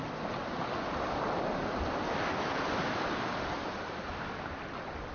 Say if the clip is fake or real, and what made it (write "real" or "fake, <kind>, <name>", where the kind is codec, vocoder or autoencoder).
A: real